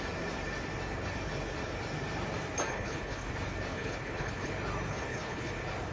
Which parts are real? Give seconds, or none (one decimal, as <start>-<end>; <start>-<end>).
0.0-2.7; 3.3-3.7; 4.5-4.9; 5.5-5.9